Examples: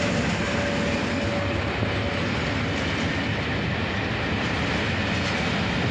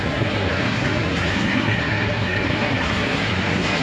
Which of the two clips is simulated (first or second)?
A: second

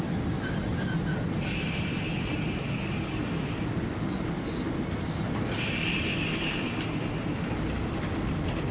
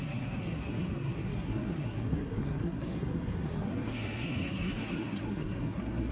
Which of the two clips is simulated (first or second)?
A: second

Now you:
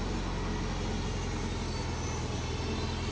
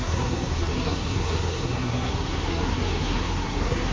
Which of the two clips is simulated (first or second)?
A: second